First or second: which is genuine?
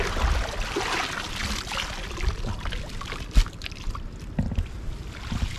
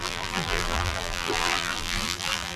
first